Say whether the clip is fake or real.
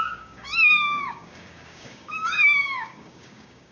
fake